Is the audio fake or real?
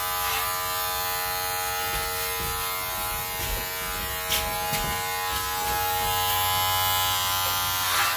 real